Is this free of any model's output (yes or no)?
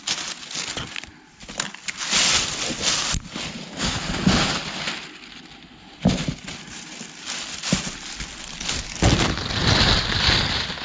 yes